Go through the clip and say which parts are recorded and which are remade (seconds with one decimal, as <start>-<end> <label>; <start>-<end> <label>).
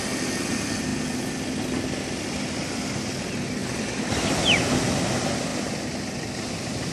0.0-6.9 recorded